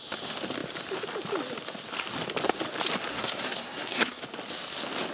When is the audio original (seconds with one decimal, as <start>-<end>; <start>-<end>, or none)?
0.0-3.1; 4.2-5.1

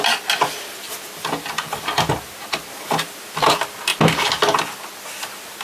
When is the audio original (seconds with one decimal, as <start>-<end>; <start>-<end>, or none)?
0.0-5.6

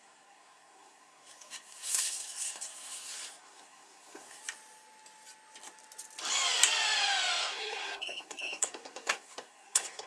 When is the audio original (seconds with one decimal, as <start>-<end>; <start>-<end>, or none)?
4.4-7.4

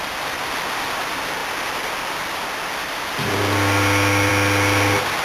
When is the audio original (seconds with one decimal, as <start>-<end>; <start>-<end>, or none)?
0.0-5.2

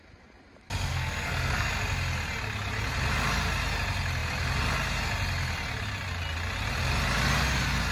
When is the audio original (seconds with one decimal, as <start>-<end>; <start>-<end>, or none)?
0.0-0.9; 1.7-7.9

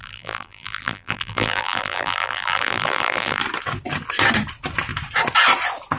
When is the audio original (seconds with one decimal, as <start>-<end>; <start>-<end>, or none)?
3.4-6.0

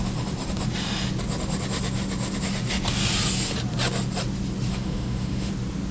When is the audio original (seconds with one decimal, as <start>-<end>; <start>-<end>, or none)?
0.0-4.7; 5.5-5.9

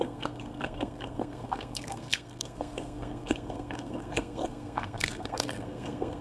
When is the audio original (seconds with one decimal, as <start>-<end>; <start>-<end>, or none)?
none